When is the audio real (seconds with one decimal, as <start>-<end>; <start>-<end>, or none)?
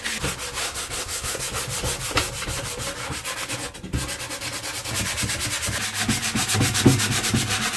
0.0-0.6; 1.4-7.8